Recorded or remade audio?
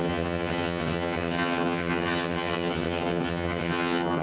remade